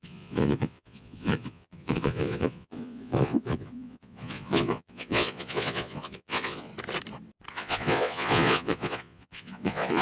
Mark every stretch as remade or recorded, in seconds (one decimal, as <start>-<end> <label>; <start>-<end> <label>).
0.0-6.7 remade; 6.7-7.5 recorded; 7.5-10.0 remade